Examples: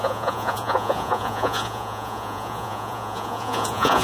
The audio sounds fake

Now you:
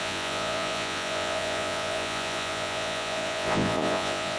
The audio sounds fake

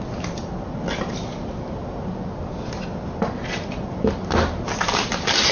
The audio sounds real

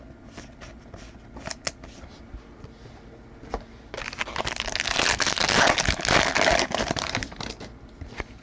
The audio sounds real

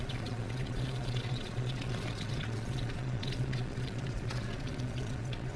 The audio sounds fake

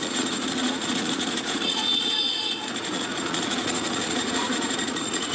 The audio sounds fake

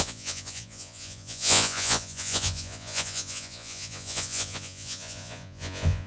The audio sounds fake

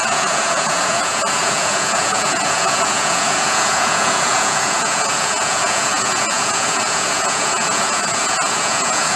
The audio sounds fake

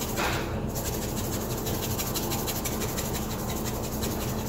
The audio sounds real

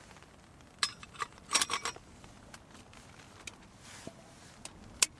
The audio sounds real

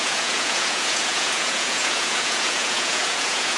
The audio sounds fake